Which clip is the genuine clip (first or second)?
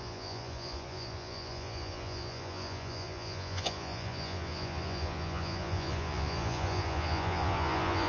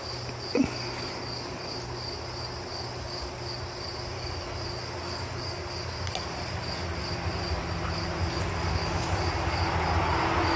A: second